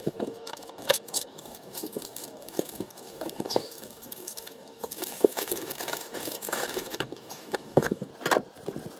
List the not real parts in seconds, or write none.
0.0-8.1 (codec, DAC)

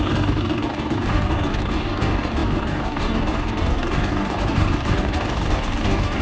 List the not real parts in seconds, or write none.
0.0-6.2 (codec, DAC)